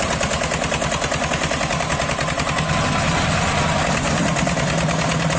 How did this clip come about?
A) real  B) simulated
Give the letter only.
A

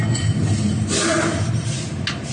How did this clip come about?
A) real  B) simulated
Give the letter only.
A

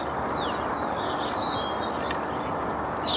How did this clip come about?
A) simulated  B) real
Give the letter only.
B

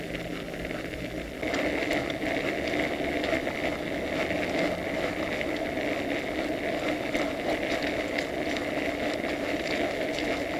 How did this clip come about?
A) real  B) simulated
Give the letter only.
A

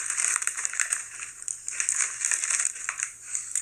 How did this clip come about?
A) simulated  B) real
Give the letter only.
A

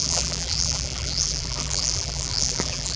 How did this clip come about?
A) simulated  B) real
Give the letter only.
A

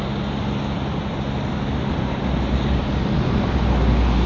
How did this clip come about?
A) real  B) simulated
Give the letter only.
A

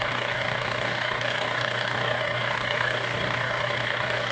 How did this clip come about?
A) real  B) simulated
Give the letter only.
B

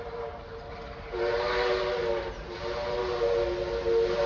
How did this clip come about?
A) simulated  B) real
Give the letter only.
B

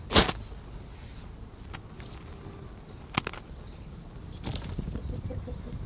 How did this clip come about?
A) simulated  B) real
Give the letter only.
B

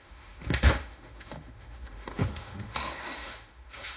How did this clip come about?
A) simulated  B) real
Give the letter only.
A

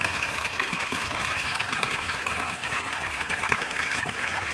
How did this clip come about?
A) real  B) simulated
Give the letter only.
B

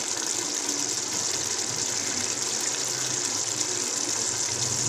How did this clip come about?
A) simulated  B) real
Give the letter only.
B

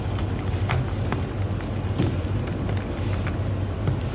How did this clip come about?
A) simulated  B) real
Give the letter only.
B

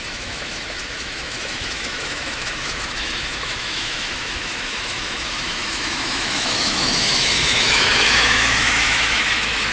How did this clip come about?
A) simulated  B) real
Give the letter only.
A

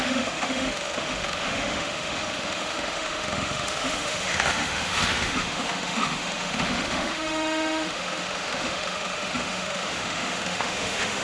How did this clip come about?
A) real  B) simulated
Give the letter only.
B